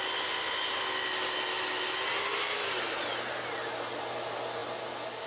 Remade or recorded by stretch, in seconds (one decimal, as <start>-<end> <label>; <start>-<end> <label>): 0.0-5.3 recorded